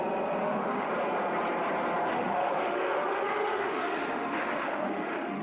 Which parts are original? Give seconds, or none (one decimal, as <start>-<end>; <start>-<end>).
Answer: 0.0-0.4; 0.9-2.1